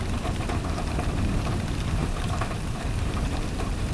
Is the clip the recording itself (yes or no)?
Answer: no